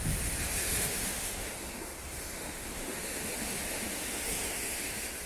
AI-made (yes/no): yes